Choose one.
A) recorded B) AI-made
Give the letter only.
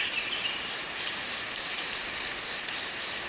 A